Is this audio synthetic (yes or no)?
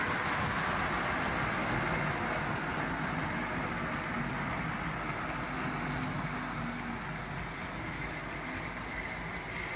no